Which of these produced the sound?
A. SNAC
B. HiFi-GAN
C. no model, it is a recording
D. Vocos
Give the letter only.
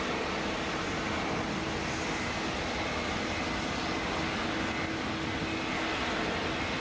C